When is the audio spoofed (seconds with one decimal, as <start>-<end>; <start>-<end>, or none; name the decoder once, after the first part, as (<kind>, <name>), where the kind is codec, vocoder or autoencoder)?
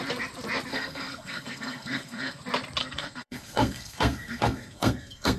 0.7-2.4 (codec, SNAC); 2.8-5.4